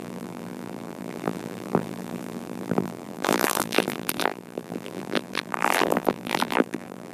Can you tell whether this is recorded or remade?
remade